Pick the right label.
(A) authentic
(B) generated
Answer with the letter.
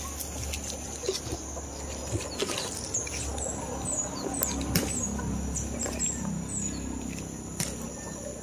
A